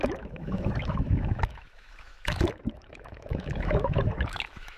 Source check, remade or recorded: remade